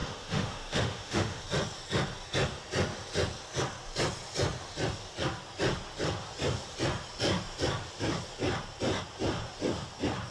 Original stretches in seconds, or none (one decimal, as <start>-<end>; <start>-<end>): 1.4-10.3